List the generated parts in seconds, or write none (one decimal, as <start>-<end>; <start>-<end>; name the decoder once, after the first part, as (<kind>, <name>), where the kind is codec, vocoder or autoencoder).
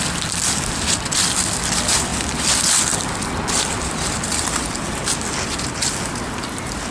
none